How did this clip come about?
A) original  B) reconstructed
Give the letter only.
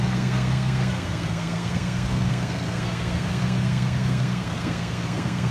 B